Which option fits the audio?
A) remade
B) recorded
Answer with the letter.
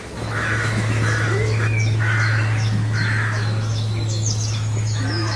A